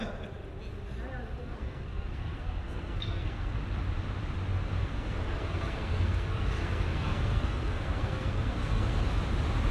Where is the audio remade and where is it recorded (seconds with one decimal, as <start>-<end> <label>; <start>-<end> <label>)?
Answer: 0.0-1.4 recorded; 1.4-3.6 remade; 3.6-4.8 recorded; 4.8-9.2 remade; 9.2-9.7 recorded